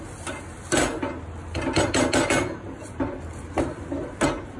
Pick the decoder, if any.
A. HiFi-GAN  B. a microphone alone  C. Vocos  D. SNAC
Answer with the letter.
B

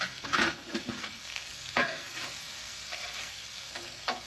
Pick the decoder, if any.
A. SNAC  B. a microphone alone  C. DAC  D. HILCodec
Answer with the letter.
A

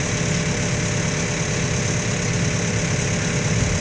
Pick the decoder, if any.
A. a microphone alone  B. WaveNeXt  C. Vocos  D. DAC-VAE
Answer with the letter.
A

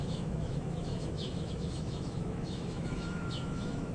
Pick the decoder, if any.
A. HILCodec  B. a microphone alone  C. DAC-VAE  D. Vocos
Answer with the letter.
C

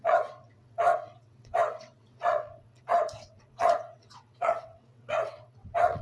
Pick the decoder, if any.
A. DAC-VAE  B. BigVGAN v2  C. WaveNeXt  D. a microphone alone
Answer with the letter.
C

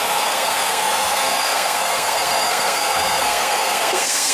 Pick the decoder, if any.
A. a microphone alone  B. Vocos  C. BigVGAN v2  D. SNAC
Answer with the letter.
D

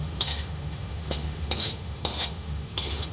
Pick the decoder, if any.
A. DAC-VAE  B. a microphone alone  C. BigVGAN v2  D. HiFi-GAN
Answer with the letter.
A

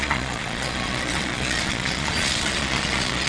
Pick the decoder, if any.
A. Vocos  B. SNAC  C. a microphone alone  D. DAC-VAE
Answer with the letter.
A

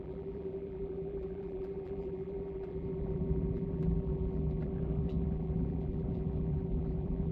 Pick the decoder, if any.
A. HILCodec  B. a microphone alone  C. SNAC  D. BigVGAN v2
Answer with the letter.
D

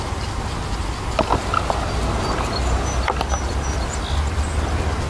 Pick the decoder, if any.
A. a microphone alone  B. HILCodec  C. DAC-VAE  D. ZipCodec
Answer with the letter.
A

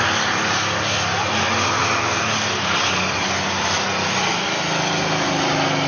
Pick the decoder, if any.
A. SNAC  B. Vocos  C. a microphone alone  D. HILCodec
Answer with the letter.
C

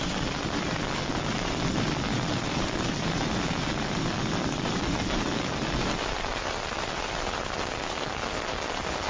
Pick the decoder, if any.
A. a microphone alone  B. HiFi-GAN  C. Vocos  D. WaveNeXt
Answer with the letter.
A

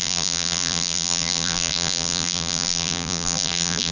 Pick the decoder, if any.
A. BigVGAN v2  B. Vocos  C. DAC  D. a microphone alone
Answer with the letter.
A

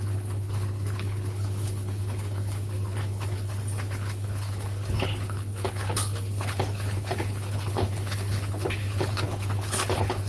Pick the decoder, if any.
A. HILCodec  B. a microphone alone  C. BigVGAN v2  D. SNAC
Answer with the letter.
A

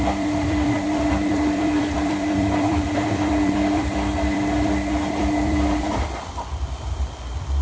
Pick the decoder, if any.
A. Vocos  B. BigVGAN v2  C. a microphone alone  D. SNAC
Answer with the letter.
B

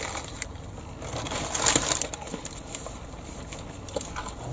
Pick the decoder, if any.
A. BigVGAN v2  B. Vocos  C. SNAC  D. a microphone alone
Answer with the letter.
D